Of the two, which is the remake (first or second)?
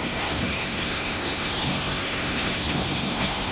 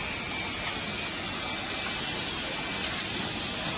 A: first